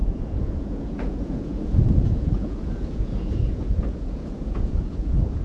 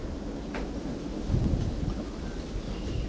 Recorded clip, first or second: second